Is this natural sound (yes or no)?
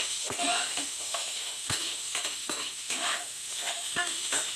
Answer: no